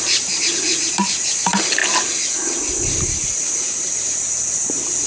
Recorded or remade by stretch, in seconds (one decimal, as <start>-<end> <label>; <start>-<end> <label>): 0.0-1.8 remade; 1.8-3.2 recorded; 3.2-5.1 remade